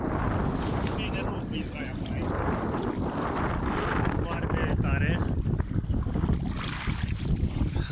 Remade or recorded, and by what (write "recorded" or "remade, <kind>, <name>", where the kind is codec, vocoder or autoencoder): recorded